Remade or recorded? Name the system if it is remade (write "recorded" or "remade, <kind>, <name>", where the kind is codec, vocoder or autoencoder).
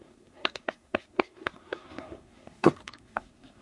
remade, codec, SNAC